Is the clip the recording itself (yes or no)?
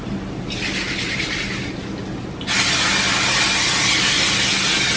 yes